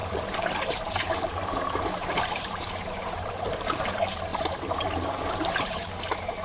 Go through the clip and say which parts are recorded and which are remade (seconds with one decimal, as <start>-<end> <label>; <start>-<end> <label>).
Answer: 0.0-6.4 remade